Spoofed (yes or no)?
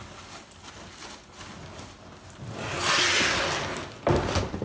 no